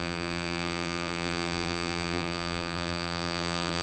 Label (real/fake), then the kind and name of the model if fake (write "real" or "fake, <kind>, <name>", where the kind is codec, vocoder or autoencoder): fake, vocoder, BigVGAN v2